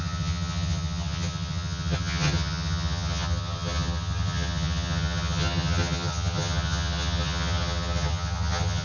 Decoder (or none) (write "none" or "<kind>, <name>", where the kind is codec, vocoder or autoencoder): vocoder, HiFi-GAN